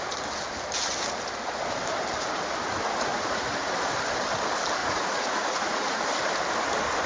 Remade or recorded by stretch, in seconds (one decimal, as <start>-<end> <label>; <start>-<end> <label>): 0.0-3.1 recorded; 3.1-3.7 remade; 3.7-4.8 recorded; 4.8-6.1 remade; 6.1-7.1 recorded